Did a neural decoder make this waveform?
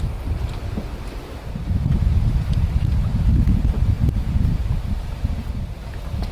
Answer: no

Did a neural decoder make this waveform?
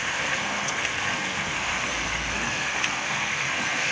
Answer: yes